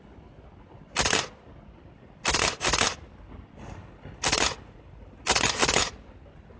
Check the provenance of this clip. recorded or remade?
recorded